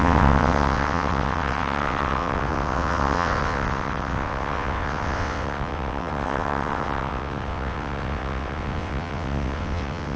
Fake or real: fake